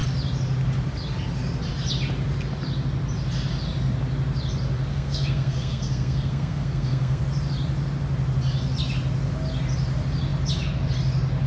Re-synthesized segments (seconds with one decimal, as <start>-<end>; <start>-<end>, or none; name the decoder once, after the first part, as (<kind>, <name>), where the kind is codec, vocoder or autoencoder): 4.9-7.2 (codec, SNAC)